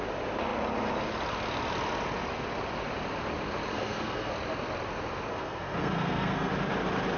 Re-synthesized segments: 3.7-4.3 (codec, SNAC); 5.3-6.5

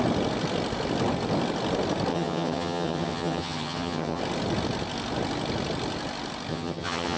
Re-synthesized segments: 2.1-4.2 (vocoder, HiFi-GAN); 6.5-7.2

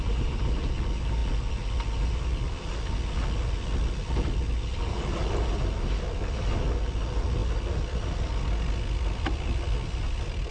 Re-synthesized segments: none

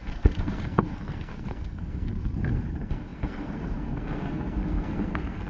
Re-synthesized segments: 0.0-5.5 (codec, SNAC)

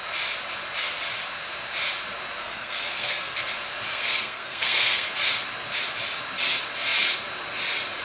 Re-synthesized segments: 2.4-3.5 (codec, SNAC); 3.9-5.1

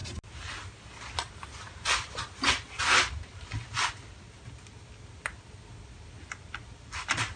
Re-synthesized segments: none

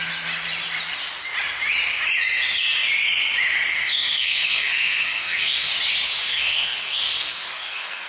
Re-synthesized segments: 3.7-5.7 (codec, SNAC); 6.2-8.1

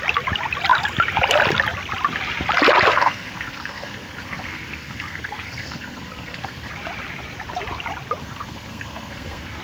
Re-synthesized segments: 2.9-6.7 (codec, SNAC); 8.2-9.6